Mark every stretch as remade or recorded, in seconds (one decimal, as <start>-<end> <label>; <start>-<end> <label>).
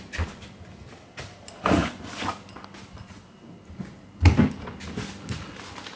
0.0-6.0 recorded